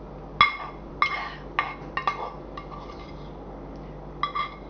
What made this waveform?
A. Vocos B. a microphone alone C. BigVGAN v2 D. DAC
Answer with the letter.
B